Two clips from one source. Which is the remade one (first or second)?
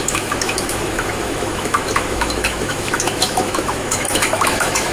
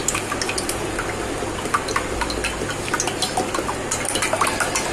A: first